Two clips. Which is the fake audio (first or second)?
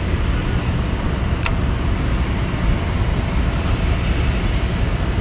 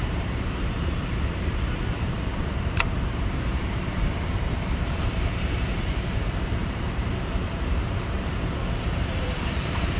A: second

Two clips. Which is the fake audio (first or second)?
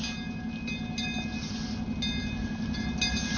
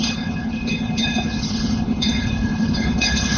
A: second